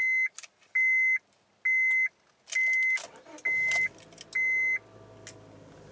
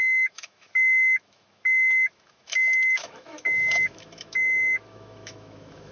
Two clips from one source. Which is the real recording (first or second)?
first